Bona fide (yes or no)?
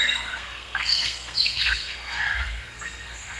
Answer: no